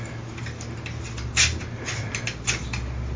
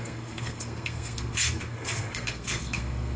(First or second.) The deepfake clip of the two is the second